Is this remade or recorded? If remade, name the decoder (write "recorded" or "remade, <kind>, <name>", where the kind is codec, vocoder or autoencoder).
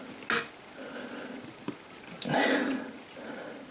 recorded